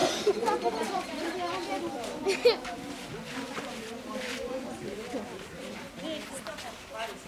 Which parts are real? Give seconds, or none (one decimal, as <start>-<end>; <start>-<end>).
1.8-7.3